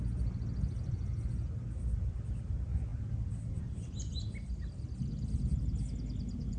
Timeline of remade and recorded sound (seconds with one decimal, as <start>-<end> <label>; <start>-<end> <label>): 0.0-6.6 recorded